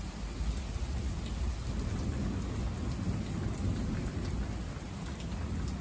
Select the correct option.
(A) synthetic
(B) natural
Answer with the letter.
B